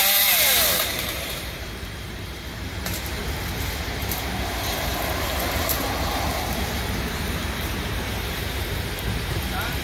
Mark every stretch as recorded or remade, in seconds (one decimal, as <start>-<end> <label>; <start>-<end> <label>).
0.0-0.8 recorded; 0.8-3.2 remade; 3.2-4.0 recorded; 4.0-9.8 remade